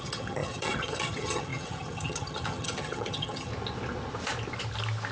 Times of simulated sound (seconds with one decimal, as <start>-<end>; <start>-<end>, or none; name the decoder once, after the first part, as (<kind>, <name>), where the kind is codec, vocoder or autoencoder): 0.0-3.5 (vocoder, HiFi-GAN)

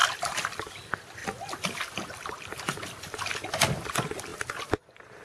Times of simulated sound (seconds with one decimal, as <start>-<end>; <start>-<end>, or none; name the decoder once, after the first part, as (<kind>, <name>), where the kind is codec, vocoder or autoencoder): 0.0-0.7 (vocoder, BigVGAN v2); 1.2-2.6

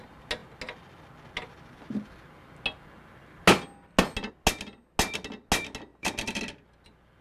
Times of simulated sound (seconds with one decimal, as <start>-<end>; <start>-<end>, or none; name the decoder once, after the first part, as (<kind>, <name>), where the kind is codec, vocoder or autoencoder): 5.9-6.4 (vocoder, BigVGAN v2)

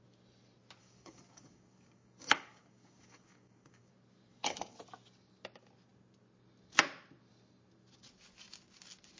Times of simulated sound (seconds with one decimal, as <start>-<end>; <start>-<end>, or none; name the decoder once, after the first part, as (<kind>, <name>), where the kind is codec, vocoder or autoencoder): 0.8-3.9 (codec, DAC); 4.3-4.8

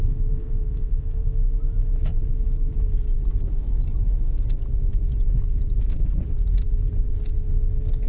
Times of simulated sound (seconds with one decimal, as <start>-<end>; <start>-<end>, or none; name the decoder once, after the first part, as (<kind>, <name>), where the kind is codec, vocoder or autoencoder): 0.0-1.4 (codec, SNAC)

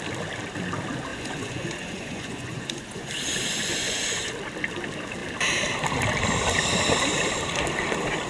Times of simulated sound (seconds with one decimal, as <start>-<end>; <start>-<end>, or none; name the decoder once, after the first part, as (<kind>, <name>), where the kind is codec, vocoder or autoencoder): 1.1-3.1 (vocoder, Vocos); 3.5-4.3

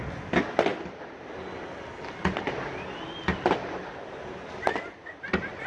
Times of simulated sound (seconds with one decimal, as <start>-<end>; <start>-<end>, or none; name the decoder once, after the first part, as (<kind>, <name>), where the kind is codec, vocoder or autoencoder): none